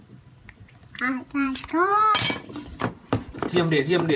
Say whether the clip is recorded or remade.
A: remade